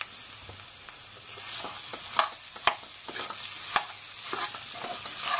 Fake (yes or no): no